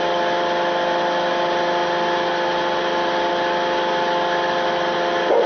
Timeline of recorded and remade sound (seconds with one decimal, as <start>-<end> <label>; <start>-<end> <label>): 0.0-5.5 recorded

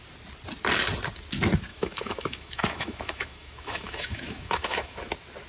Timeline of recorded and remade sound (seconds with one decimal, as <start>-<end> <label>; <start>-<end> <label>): 0.0-1.7 recorded; 1.7-5.0 remade; 5.0-5.5 recorded

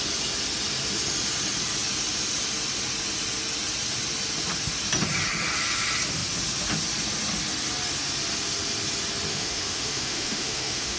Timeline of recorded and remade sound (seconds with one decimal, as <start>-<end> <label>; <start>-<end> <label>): 0.0-9.3 recorded; 9.3-11.0 remade

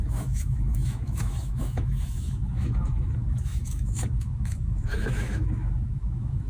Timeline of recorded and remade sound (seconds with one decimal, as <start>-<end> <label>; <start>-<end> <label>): 0.0-6.5 remade

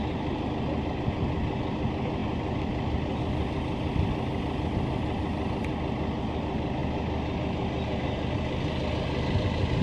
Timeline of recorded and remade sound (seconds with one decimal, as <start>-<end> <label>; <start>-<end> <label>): 0.0-9.8 recorded

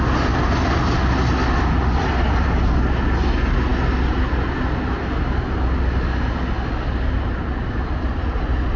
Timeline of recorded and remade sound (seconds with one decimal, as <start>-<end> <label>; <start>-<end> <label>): 0.0-8.8 recorded

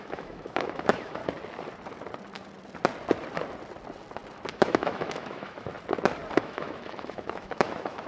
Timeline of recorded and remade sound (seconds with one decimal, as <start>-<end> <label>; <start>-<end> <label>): 0.0-1.2 remade; 1.2-4.5 recorded; 4.5-5.7 remade; 5.7-6.4 recorded; 6.4-8.1 remade

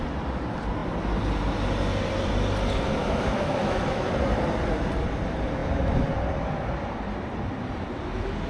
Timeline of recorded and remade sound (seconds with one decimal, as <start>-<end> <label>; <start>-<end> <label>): 0.0-3.0 recorded; 3.0-4.1 remade; 4.1-8.5 recorded